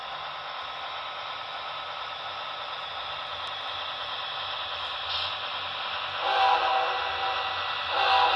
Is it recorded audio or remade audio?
recorded